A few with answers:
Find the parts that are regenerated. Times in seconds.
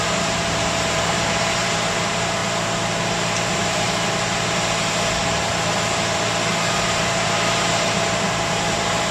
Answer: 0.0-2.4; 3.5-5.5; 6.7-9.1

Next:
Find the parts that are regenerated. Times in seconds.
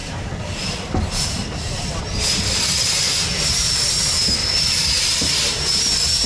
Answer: 0.0-2.0; 4.4-5.2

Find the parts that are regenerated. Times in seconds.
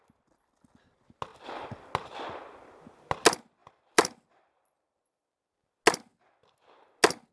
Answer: 1.3-1.9; 3.6-4.7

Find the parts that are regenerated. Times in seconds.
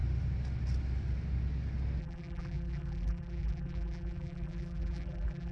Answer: 2.0-5.5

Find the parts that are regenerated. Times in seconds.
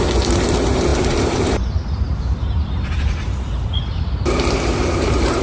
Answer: 0.0-3.5; 4.9-5.4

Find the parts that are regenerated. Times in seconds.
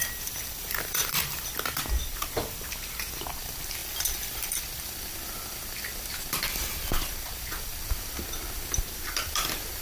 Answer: 0.0-1.5; 3.8-4.6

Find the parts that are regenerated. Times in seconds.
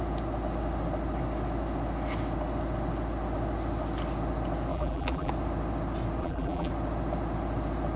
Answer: 4.7-5.3; 6.2-6.7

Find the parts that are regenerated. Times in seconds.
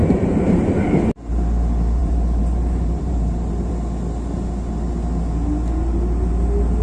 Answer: 0.0-0.7; 2.0-3.7